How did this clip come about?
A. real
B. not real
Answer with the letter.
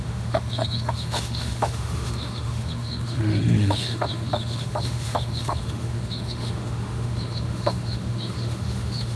B